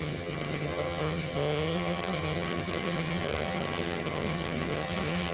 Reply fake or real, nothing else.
fake